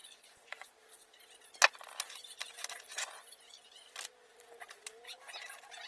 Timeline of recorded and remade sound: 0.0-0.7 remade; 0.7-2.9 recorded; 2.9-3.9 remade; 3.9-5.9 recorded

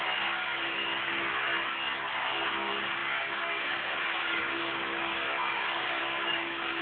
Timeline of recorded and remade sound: 0.0-0.9 remade; 0.9-2.1 recorded; 2.1-6.8 remade